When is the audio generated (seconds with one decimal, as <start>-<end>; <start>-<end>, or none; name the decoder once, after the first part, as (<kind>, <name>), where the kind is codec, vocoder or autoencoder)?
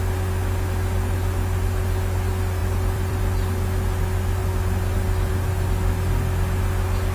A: 2.6-3.2 (vocoder, BigVGAN v2)